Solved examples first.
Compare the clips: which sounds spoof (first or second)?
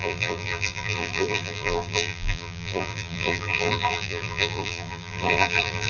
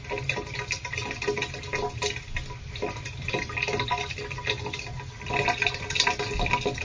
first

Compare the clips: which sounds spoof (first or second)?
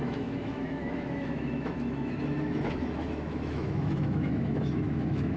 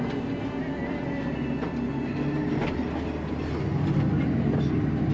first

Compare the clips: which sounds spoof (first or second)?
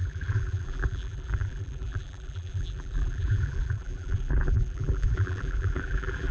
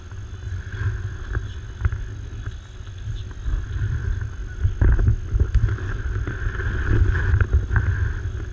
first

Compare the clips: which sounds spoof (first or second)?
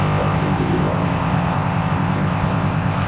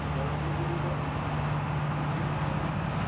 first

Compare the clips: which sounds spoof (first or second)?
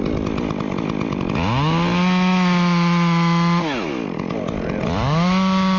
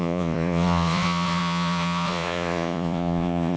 second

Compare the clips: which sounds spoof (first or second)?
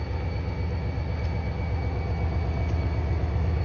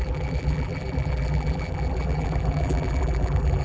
second